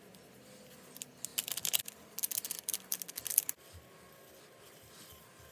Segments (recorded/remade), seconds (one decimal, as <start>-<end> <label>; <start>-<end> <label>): 0.0-5.5 recorded